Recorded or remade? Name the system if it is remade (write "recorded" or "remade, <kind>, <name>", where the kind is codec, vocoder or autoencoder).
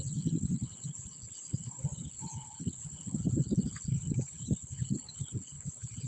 remade, codec, HILCodec